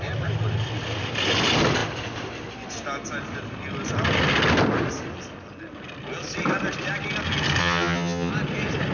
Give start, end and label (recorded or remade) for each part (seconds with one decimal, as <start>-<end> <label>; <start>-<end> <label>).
0.0-7.6 recorded; 7.6-8.3 remade; 8.3-8.9 recorded